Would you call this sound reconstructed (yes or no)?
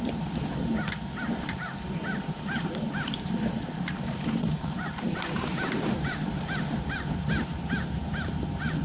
yes